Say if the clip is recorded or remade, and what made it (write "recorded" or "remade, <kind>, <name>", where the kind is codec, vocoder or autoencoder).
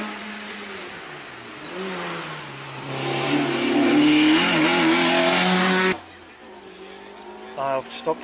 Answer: recorded